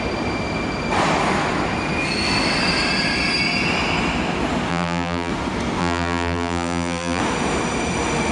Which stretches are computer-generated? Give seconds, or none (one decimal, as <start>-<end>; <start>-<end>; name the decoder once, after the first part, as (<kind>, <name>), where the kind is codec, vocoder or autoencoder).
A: 4.7-5.3 (vocoder, BigVGAN v2); 5.8-7.2